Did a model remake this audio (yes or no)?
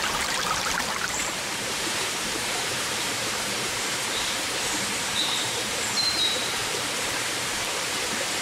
yes